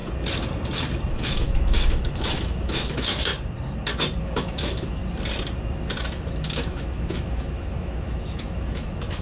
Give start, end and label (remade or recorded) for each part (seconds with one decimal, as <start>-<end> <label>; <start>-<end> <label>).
0.0-1.1 recorded; 1.1-3.3 remade; 3.3-4.2 recorded; 4.2-5.0 remade; 5.0-6.0 recorded; 6.0-9.2 remade